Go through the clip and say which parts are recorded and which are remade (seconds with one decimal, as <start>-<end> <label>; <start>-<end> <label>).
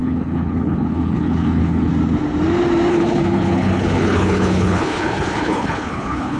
0.0-1.9 remade; 1.9-2.9 recorded; 2.9-6.4 remade